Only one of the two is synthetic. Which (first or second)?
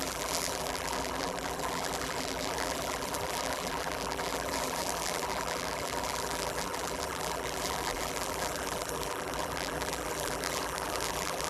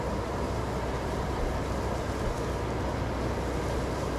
first